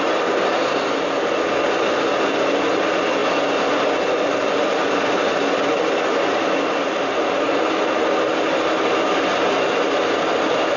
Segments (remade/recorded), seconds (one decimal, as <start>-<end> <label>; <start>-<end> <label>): 0.0-10.8 recorded